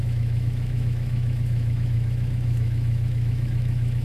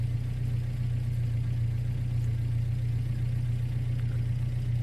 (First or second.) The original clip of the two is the second